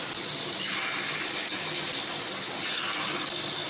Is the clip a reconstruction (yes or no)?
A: no